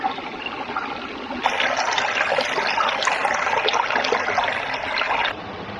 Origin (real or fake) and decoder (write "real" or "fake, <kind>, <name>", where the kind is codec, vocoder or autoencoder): real